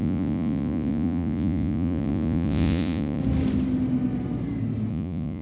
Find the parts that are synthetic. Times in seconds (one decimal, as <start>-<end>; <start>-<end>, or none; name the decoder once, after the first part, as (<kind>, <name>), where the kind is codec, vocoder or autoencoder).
0.0-3.2 (vocoder, Vocos); 4.9-5.4